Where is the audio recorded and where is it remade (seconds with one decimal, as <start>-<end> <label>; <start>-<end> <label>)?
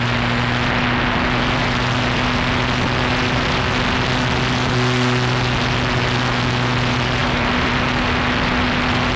0.0-7.2 recorded; 7.2-7.7 remade; 7.7-9.2 recorded